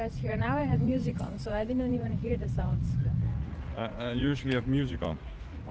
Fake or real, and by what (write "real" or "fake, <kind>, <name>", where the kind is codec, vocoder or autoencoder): fake, vocoder, Vocos